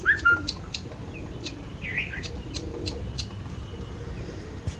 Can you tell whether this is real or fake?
real